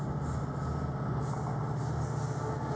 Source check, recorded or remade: recorded